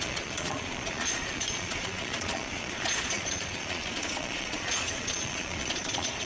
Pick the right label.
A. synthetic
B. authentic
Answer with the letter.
A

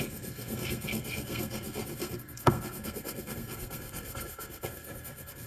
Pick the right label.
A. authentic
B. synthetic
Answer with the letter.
B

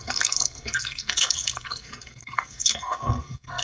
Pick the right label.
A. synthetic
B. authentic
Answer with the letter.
A